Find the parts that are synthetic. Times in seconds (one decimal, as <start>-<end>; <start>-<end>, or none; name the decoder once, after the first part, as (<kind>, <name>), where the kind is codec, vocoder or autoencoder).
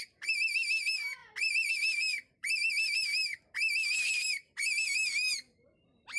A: 0.0-1.2 (vocoder, BigVGAN v2); 1.7-6.2